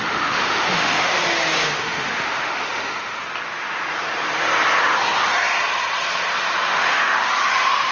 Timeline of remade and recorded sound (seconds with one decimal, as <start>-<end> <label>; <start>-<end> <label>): 0.0-1.1 remade; 1.1-1.8 recorded; 1.8-3.2 remade; 3.2-6.7 recorded; 6.7-7.9 remade

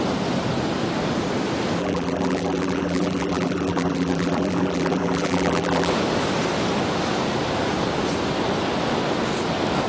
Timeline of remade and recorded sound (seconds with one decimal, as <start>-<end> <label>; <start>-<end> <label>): 0.0-1.8 recorded; 1.8-5.9 remade; 5.9-9.9 recorded

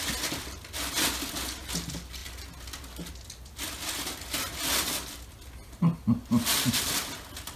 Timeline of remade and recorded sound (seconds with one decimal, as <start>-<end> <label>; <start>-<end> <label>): 0.0-7.6 recorded

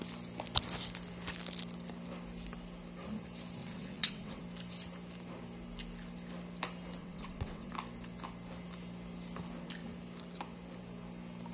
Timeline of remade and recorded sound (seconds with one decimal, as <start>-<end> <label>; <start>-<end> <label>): 0.0-3.6 recorded; 3.6-4.4 remade; 4.4-7.0 recorded; 7.0-7.7 remade; 7.7-11.5 recorded